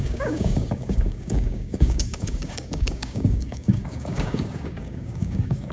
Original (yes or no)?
no